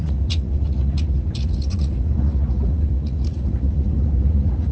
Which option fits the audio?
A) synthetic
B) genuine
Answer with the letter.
A